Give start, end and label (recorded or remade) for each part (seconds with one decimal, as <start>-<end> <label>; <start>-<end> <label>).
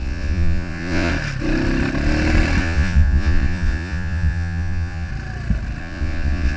0.0-1.1 remade; 1.1-2.6 recorded; 2.6-5.1 remade; 5.1-5.8 recorded; 5.8-6.6 remade